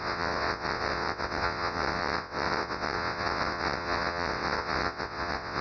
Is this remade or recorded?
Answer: remade